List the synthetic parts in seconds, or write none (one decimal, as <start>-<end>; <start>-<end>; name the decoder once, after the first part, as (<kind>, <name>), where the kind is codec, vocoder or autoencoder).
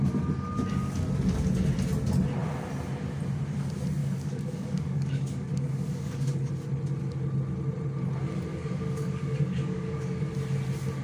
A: 4.0-6.5 (codec, DAC); 8.5-10.3